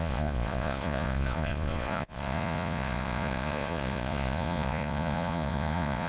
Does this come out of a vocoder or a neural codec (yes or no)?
yes